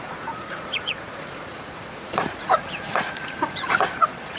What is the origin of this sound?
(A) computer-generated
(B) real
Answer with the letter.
A